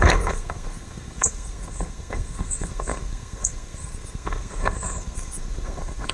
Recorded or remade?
remade